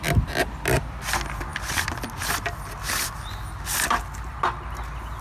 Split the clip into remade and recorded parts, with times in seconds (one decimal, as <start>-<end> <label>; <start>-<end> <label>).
0.0-5.2 recorded